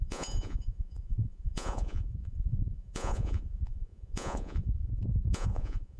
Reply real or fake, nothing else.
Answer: fake